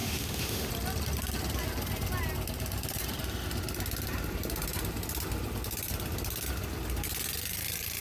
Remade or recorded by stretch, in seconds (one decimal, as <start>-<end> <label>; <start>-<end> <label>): 0.0-0.7 remade; 0.7-8.0 recorded